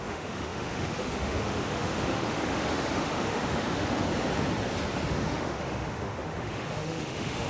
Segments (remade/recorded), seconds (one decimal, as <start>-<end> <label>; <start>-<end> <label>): 0.0-4.1 remade; 4.1-5.1 recorded; 5.1-7.5 remade